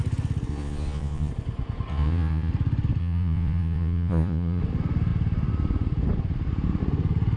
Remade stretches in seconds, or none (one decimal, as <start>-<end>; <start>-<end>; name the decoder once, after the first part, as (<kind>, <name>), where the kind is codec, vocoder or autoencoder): 0.5-1.3 (vocoder, Vocos); 1.9-2.5; 3.0-4.6